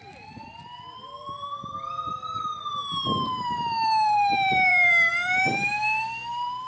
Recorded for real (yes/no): no